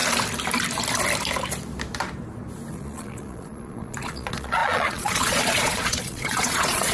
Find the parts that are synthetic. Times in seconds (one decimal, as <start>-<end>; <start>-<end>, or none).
2.7-6.9